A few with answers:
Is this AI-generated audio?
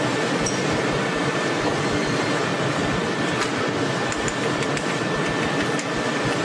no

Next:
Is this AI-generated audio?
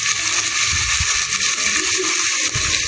no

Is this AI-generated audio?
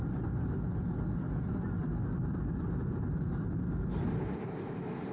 no